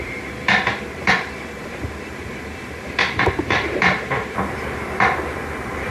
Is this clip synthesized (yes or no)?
yes